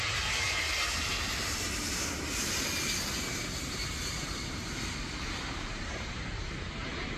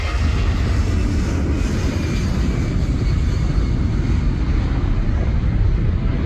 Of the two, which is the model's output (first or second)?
first